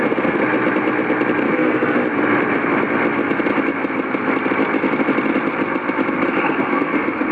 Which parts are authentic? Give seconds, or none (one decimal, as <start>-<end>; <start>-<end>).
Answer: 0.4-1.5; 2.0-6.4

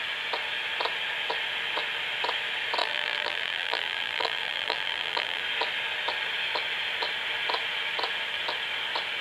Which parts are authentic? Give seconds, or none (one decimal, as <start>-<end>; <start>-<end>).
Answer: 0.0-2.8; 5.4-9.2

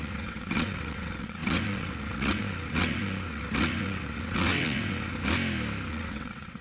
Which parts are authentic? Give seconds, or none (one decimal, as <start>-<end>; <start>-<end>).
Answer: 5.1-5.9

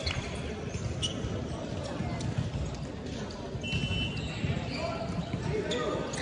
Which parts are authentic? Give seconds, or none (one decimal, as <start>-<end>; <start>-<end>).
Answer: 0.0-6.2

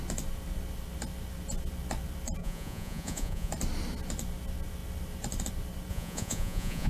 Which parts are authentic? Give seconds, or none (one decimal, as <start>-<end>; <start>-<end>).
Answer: 0.0-2.4; 3.5-5.9

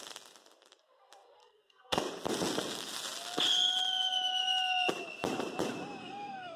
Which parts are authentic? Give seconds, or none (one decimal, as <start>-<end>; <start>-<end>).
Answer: 0.0-1.4; 2.0-6.0

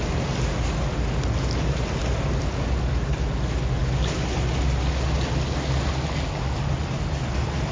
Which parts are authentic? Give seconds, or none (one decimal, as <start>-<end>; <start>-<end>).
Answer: 0.0-7.7